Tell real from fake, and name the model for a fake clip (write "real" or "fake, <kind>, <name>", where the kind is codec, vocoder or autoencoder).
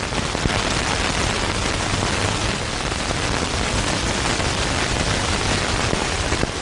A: real